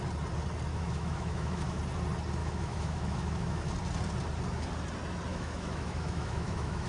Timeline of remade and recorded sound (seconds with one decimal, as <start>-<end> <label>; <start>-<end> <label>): 0.0-0.7 recorded; 0.7-1.8 remade; 1.8-2.4 recorded; 2.4-3.7 remade; 3.7-5.3 recorded; 5.3-6.9 remade